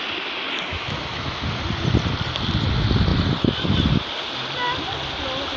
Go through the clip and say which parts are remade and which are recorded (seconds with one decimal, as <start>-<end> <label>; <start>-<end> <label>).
0.0-0.7 recorded; 0.7-1.5 remade; 1.5-5.6 recorded